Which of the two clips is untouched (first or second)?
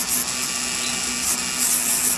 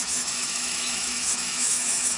first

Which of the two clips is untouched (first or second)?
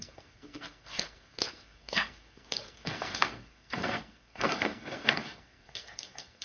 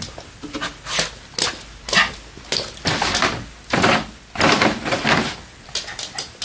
second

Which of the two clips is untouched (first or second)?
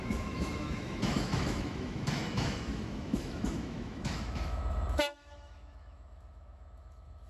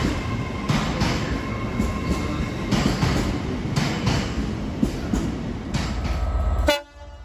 second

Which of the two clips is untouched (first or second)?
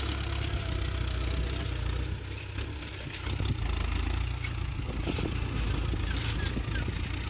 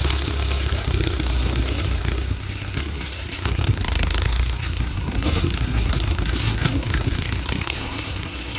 first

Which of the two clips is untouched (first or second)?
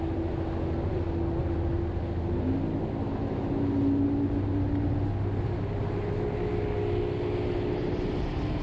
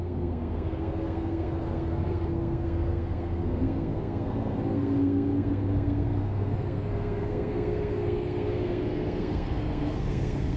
first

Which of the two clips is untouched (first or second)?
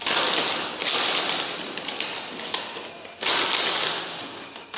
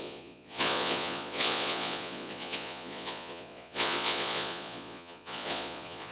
first